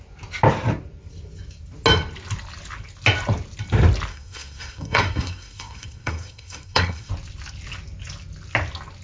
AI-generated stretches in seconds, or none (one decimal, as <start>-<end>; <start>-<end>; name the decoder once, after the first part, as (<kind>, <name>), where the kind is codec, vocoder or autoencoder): 4.1-7.1 (codec, SNAC)